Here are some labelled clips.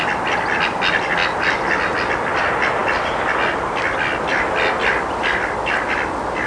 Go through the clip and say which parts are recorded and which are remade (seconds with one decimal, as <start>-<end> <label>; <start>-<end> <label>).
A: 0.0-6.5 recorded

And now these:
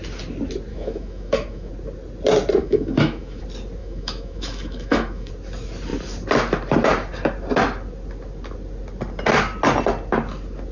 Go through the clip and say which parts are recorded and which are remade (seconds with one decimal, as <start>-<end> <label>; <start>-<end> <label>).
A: 0.0-0.7 recorded; 0.7-1.7 remade; 1.7-2.6 recorded; 2.6-3.4 remade; 3.4-3.8 recorded; 3.8-5.3 remade; 5.3-10.7 recorded

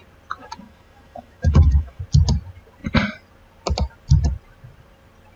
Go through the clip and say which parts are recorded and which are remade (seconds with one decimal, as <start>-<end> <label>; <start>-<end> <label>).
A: 0.0-0.4 recorded; 0.4-2.0 remade; 2.0-5.4 recorded

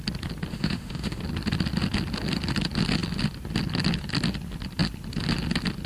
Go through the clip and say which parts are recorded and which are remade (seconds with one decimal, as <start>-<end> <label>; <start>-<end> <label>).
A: 0.0-0.5 recorded; 0.5-1.2 remade; 1.2-5.9 recorded

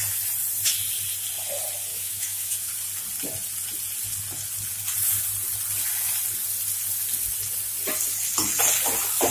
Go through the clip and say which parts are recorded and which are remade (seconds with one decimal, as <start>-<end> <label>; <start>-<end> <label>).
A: 0.0-1.9 recorded; 1.9-2.7 remade; 2.7-9.3 recorded

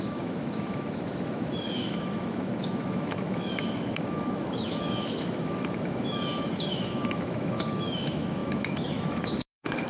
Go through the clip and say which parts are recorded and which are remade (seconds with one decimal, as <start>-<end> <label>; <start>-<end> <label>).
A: 0.0-9.9 remade